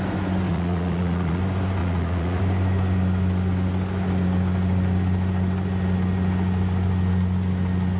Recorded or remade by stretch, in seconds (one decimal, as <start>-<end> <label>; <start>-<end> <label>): 0.0-0.5 recorded; 0.5-1.4 remade; 1.4-1.8 recorded; 1.8-2.4 remade; 2.4-8.0 recorded